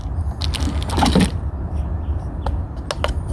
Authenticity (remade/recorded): recorded